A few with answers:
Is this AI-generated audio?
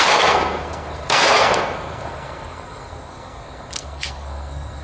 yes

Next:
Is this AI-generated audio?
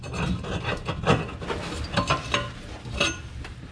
no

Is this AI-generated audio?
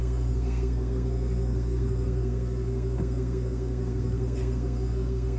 yes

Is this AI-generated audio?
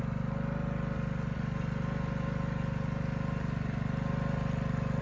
no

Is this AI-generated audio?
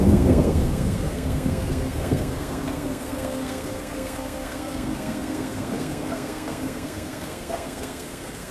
yes